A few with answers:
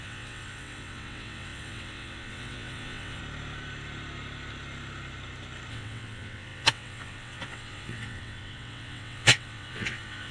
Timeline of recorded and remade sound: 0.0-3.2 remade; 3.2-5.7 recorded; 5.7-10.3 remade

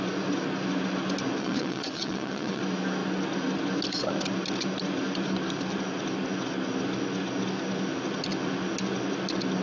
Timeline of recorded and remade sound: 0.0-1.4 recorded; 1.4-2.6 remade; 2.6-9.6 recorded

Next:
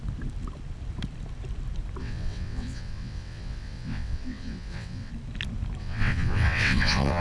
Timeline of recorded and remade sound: 0.0-2.0 recorded; 2.0-5.1 remade; 5.1-5.8 recorded; 5.8-7.2 remade

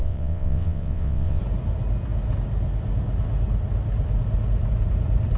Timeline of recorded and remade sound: 0.0-1.4 remade; 1.4-5.4 recorded